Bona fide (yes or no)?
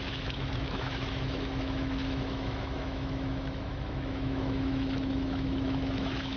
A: no